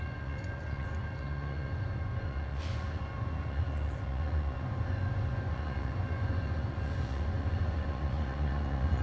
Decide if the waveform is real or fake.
fake